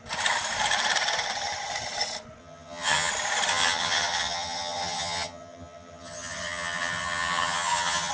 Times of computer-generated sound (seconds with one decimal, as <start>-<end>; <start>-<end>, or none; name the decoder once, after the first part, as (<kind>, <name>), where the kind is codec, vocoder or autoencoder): 2.4-3.1 (vocoder, HiFi-GAN); 3.5-8.1